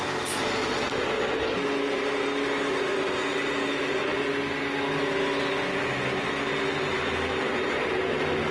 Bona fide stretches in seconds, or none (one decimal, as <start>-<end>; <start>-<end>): 0.0-8.5